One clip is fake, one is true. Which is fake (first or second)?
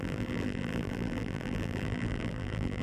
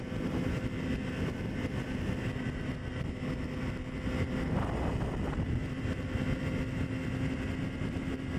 first